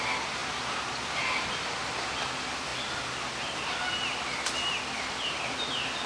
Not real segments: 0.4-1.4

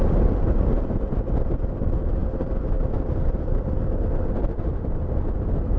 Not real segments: none

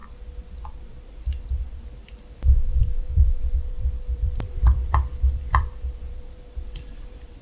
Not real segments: 1.0-7.4

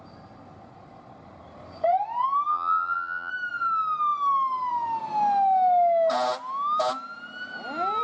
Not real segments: 2.5-3.3

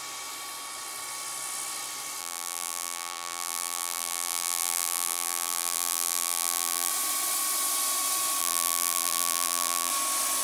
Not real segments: 2.2-6.9; 8.4-9.9

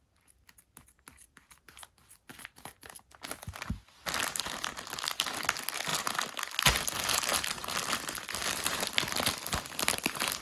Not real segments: 7.3-9.4

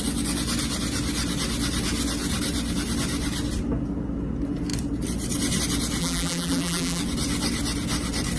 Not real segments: 6.0-7.0